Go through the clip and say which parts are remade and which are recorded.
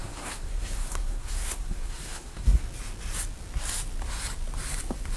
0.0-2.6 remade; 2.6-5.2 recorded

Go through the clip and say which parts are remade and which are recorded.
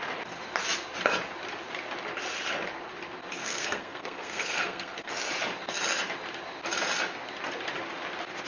0.0-3.4 recorded; 3.4-5.1 remade; 5.1-8.5 recorded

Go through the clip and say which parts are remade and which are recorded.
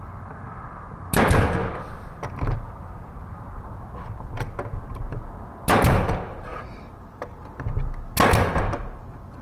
0.0-9.4 recorded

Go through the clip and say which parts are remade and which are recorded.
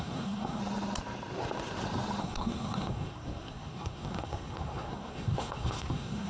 0.0-0.6 remade; 0.6-2.2 recorded; 2.2-6.3 remade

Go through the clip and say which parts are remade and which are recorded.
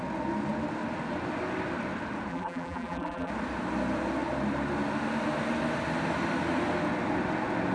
0.0-2.3 recorded; 2.3-3.3 remade; 3.3-7.7 recorded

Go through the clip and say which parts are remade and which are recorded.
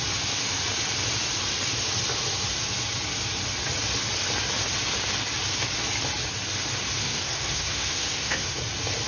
0.0-7.0 recorded; 7.0-8.6 remade; 8.6-9.1 recorded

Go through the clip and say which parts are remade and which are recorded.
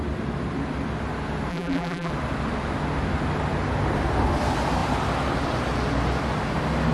0.0-1.5 recorded; 1.5-2.1 remade; 2.1-6.9 recorded